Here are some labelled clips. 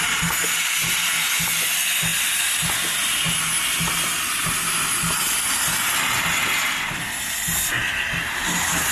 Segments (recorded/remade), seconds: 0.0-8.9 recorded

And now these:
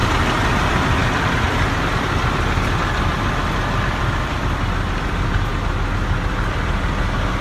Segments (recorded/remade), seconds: 0.0-0.6 recorded; 0.6-5.5 remade; 5.5-6.3 recorded; 6.3-7.4 remade

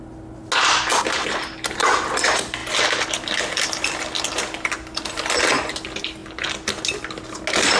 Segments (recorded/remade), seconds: 0.0-0.9 recorded; 0.9-1.8 remade; 1.8-2.6 recorded; 2.6-4.7 remade; 4.7-7.8 recorded

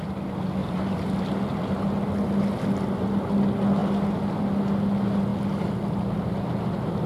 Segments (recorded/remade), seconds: 0.0-0.6 recorded; 0.6-1.2 remade; 1.2-7.1 recorded

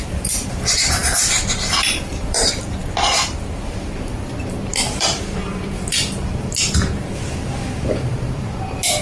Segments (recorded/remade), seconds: 0.0-2.8 remade; 2.8-3.5 recorded; 3.5-9.0 remade

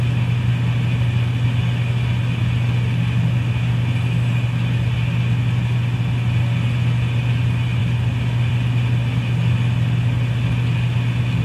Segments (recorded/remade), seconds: 0.0-11.4 recorded